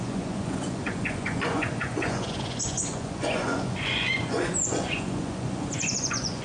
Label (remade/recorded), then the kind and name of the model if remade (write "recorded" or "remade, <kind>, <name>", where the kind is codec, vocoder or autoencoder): remade, vocoder, Vocos